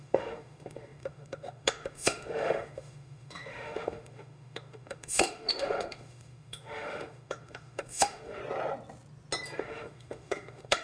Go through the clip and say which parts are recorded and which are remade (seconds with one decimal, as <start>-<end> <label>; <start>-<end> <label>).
0.0-8.4 remade; 8.4-9.6 recorded; 9.6-10.8 remade